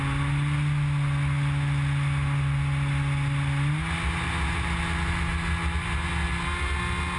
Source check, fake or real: real